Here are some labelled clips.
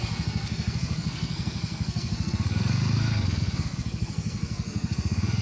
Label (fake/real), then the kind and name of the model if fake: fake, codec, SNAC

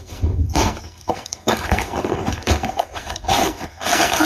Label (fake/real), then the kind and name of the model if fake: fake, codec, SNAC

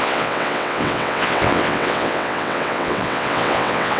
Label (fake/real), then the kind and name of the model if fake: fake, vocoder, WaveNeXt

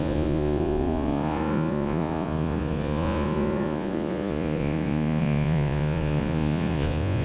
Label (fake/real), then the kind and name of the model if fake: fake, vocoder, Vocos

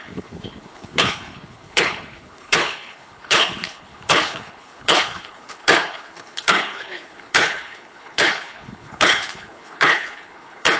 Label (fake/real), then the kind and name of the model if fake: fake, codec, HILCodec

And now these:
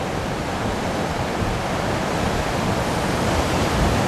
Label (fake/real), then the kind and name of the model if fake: real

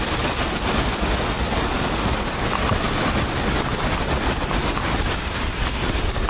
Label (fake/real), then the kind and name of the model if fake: real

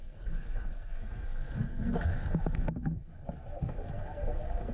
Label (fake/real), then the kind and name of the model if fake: fake, codec, SNAC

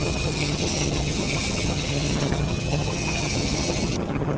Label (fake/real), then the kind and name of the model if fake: fake, vocoder, HiFi-GAN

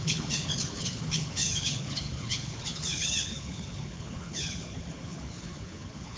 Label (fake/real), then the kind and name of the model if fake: fake, codec, HILCodec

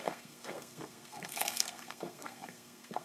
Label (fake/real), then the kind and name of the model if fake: fake, codec, SNAC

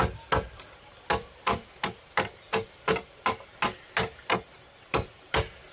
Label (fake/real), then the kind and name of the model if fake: real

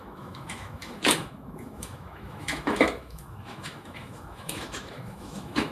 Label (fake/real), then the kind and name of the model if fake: fake, autoencoder, DAC-VAE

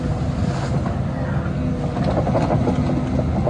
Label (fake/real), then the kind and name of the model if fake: real